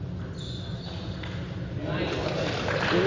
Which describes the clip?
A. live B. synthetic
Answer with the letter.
A